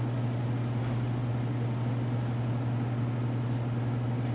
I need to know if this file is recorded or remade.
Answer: recorded